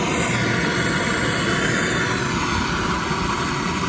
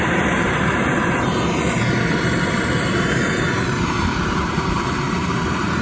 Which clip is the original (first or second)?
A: first